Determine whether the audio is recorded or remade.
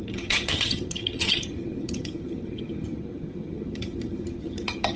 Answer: remade